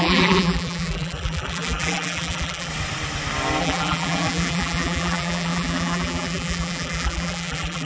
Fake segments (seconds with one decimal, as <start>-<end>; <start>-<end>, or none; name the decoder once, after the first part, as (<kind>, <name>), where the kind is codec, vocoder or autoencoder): 0.0-2.7 (vocoder, BigVGAN v2); 3.6-7.8